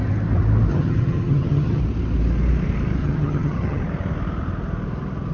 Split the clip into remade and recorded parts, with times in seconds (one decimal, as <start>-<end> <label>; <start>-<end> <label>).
0.0-0.7 recorded; 0.7-1.8 remade; 1.8-3.0 recorded; 3.0-3.8 remade; 3.8-5.3 recorded